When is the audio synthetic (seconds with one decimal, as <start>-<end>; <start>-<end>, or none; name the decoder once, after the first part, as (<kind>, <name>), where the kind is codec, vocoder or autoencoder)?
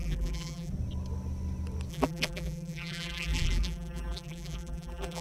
0.0-0.7 (vocoder, BigVGAN v2); 1.9-5.2